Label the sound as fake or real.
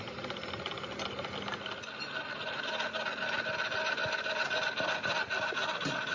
real